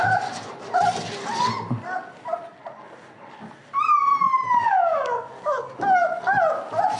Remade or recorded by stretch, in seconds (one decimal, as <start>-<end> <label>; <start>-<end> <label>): 0.0-4.6 recorded; 4.6-5.8 remade; 5.8-7.0 recorded